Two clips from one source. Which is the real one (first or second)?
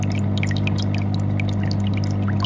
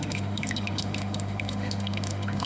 first